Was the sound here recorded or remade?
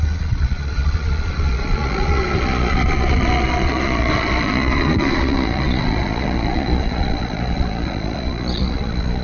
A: remade